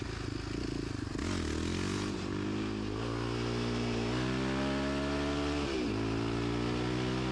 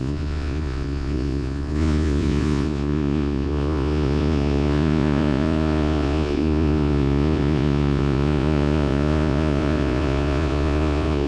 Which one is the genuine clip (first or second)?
first